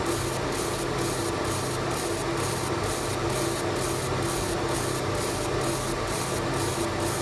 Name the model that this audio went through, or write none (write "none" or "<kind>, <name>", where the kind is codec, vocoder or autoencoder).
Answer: none